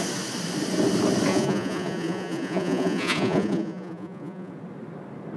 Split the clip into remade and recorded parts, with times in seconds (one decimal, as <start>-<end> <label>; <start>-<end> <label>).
0.0-1.3 recorded; 1.3-4.5 remade; 4.5-5.4 recorded